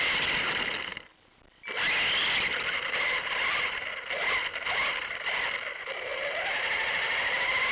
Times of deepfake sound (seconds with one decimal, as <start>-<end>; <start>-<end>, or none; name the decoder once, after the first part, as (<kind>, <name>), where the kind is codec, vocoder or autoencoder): 0.0-0.9 (vocoder, BigVGAN v2); 2.2-4.5; 5.0-6.1; 6.9-7.7